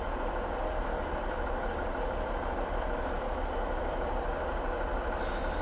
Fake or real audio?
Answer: real